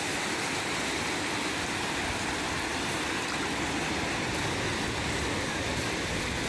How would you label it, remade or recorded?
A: recorded